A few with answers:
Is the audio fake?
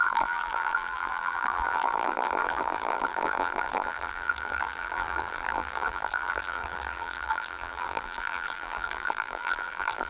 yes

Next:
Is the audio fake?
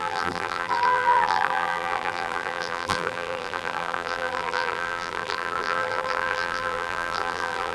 yes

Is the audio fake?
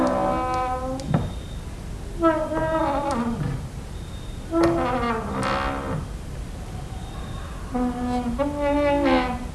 no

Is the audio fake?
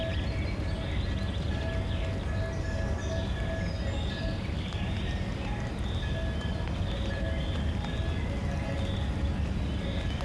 no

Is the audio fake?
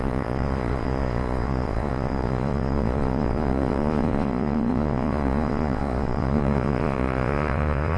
yes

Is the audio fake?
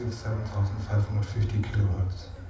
no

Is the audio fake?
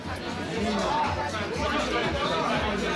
no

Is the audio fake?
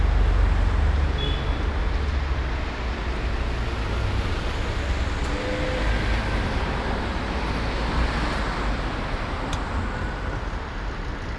no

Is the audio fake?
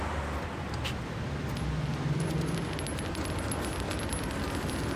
no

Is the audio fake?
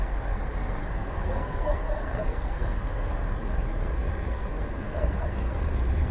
yes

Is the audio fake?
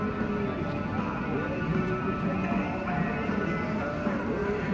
no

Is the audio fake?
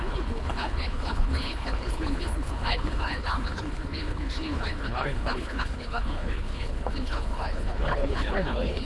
yes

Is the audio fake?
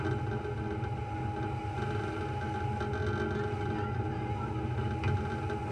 no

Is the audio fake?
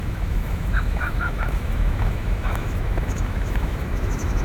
yes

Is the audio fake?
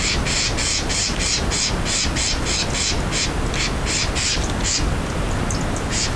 no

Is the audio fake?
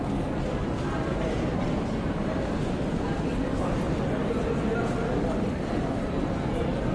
no